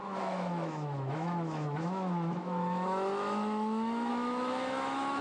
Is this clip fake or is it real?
fake